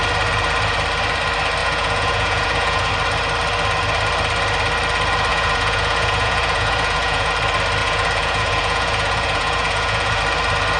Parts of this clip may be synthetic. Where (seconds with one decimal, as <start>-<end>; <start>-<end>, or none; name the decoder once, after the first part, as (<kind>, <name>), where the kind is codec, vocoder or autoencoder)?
1.6-2.9 (vocoder, Vocos); 5.3-7.3; 7.8-10.2